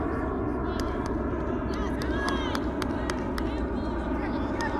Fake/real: real